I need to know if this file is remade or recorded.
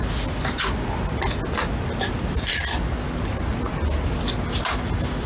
recorded